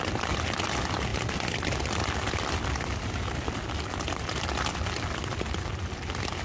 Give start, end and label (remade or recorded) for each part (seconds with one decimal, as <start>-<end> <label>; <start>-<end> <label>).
0.0-6.4 recorded